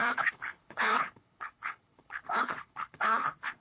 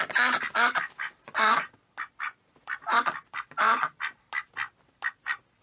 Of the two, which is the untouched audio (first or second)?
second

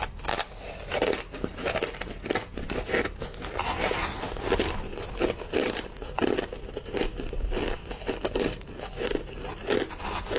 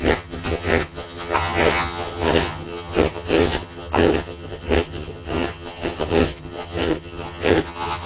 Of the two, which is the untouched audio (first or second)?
first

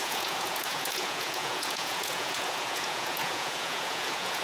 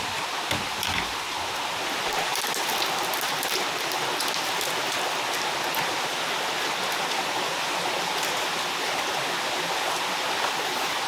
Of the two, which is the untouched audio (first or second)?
second